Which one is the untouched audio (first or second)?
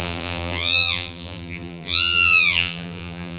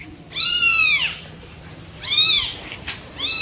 second